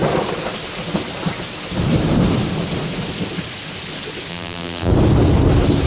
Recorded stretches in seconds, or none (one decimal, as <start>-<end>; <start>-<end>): 0.0-4.3; 4.9-5.9